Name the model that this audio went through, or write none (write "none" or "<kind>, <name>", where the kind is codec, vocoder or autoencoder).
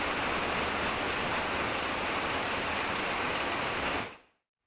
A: none